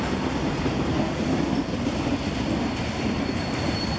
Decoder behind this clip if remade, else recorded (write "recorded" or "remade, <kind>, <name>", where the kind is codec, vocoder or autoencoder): recorded